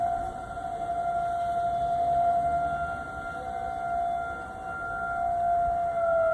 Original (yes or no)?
yes